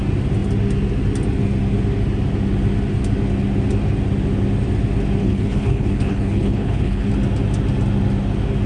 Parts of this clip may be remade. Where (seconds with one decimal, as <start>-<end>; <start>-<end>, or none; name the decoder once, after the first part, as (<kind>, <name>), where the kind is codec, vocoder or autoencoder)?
5.2-7.1 (codec, HILCodec)